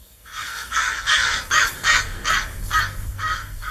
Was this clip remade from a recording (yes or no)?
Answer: yes